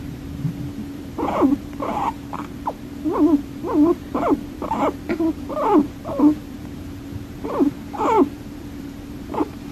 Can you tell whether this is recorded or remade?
remade